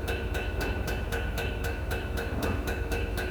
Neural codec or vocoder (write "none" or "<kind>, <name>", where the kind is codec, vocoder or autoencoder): autoencoder, DAC-VAE